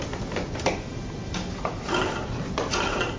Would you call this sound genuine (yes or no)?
yes